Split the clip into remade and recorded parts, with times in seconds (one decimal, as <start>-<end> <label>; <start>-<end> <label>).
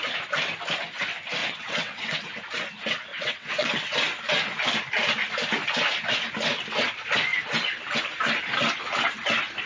0.0-1.4 recorded; 1.4-2.2 remade; 2.2-3.1 recorded; 3.1-3.7 remade; 3.7-9.7 recorded